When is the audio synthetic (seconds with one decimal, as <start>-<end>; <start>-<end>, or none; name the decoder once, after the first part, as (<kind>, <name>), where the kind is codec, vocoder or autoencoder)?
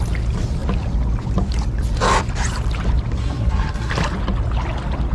3.2-3.9 (codec, SNAC)